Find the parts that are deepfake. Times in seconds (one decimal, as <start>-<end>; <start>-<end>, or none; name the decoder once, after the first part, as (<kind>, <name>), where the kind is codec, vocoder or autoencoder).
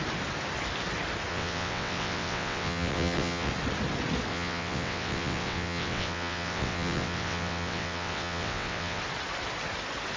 1.3-3.5 (vocoder, WaveNeXt); 4.3-9.0